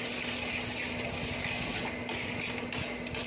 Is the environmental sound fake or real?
real